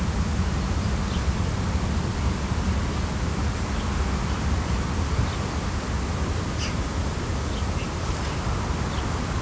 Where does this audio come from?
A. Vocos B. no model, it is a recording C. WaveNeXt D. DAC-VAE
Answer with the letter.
B